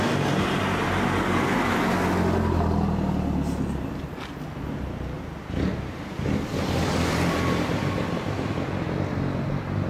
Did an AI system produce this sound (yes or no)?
no